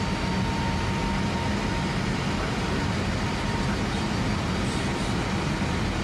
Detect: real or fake real